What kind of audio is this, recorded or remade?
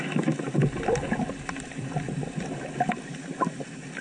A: recorded